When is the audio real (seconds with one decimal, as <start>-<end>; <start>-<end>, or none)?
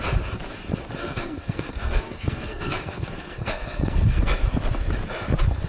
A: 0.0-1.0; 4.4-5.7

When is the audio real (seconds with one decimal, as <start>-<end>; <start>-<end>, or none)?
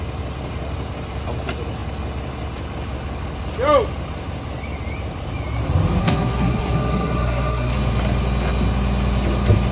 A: 0.0-6.0; 7.7-9.7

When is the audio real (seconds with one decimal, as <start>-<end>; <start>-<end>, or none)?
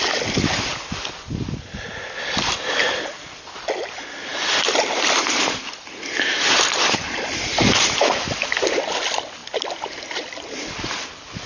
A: 0.0-4.3; 5.2-11.5